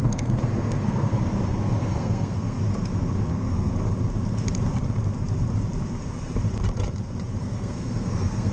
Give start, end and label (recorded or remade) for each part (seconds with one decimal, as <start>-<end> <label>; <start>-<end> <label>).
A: 0.0-1.1 remade; 1.1-1.6 recorded; 1.6-2.6 remade; 2.6-3.3 recorded; 3.3-3.7 remade; 3.7-7.4 recorded; 7.4-8.5 remade

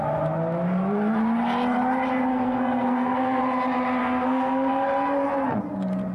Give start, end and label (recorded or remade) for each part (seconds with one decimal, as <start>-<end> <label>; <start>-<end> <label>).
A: 0.0-2.3 recorded; 2.3-3.4 remade; 3.4-4.0 recorded; 4.0-4.7 remade; 4.7-6.1 recorded